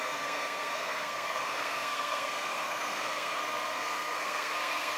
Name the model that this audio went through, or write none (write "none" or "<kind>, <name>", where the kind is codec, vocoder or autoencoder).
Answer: codec, SNAC